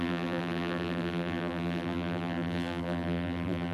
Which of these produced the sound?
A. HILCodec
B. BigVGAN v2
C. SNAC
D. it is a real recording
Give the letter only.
B